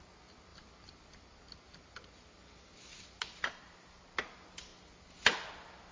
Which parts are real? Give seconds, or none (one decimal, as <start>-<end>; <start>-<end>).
0.0-5.9

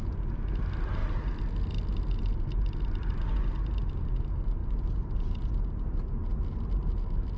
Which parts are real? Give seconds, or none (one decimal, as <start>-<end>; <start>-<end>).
0.0-7.4

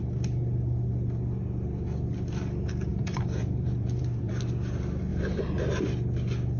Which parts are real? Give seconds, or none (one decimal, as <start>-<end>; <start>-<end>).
0.0-2.9; 4.3-6.6

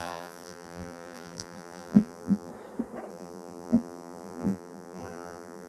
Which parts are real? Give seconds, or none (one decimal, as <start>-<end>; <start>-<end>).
2.5-3.1